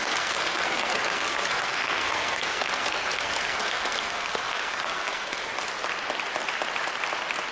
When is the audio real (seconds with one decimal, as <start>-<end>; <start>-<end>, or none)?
5.5-7.5